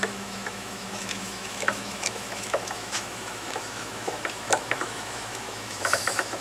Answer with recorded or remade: remade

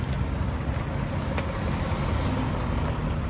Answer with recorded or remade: recorded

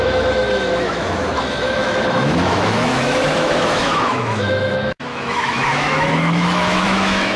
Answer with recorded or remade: remade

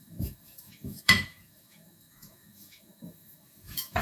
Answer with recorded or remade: remade